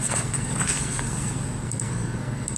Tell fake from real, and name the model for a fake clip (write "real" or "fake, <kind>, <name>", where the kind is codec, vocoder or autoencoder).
fake, codec, SNAC